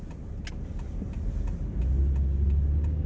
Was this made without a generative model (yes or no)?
yes